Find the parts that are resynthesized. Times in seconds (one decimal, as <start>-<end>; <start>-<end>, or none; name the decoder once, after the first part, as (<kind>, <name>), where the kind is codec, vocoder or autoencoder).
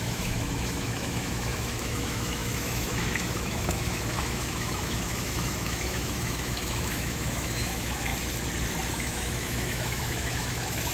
0.0-8.1 (autoencoder, DAC-VAE); 8.9-10.9